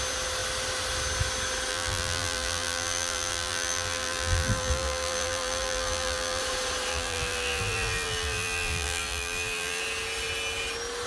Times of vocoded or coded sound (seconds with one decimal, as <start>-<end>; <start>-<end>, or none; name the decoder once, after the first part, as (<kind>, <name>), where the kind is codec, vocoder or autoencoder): 1.7-6.4 (vocoder, BigVGAN v2); 6.9-9.8